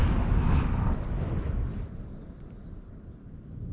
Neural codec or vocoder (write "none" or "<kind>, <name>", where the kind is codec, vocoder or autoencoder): none